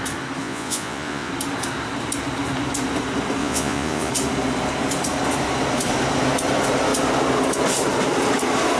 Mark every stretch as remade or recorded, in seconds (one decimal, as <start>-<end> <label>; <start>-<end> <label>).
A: 0.0-0.4 recorded; 0.4-1.3 remade; 1.3-3.4 recorded; 3.4-4.1 remade; 4.1-8.8 recorded